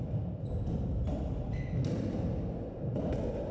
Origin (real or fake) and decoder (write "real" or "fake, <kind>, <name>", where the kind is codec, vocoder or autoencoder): real